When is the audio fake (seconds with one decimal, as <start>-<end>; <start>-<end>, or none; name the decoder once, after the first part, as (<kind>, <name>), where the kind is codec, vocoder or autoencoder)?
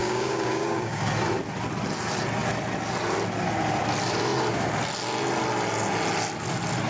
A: 0.0-1.0 (codec, DAC)